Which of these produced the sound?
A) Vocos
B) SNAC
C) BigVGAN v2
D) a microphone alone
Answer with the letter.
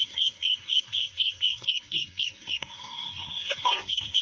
B